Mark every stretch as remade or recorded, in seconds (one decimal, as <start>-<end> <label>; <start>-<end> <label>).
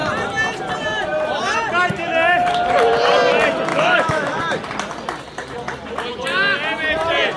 0.0-3.7 recorded; 3.7-4.4 remade; 4.4-7.4 recorded